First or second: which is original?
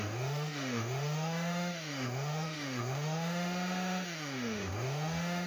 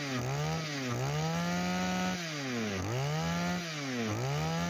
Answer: second